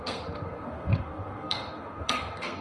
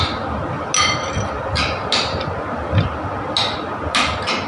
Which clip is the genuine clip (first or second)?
second